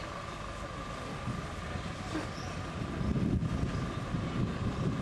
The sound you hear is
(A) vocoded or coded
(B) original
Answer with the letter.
B